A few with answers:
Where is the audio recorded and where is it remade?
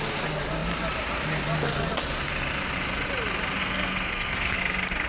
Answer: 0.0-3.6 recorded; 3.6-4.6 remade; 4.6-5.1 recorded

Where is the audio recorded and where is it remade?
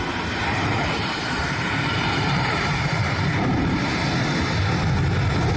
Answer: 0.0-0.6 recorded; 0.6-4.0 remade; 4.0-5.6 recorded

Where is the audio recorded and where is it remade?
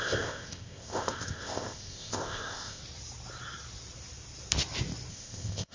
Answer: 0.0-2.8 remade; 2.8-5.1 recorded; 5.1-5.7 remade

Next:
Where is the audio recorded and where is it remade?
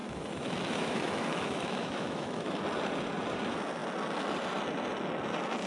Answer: 0.0-2.6 remade; 2.6-5.7 recorded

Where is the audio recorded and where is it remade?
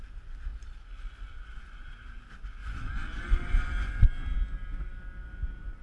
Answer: 0.0-2.6 recorded; 2.6-4.1 remade; 4.1-5.8 recorded